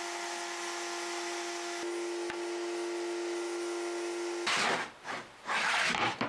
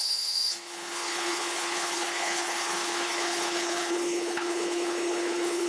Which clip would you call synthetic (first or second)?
second